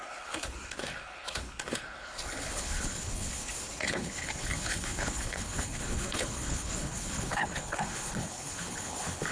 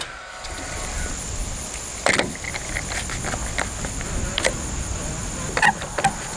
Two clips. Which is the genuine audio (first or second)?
second